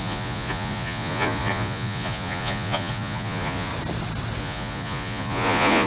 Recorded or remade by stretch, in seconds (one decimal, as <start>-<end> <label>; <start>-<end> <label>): 0.0-3.7 remade; 3.7-4.4 recorded; 4.4-5.9 remade